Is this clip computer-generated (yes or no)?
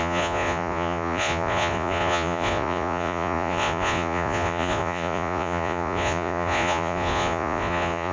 yes